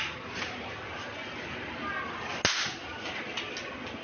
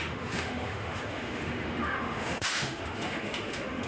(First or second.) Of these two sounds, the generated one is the second